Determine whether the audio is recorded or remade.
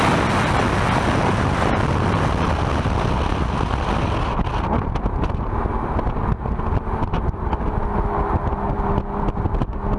recorded